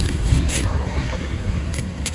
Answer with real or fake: fake